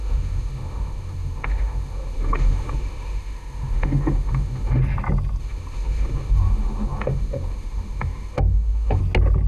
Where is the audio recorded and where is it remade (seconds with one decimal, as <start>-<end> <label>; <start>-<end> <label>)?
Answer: 0.0-4.8 remade; 4.8-5.4 recorded; 5.4-9.0 remade; 9.0-9.5 recorded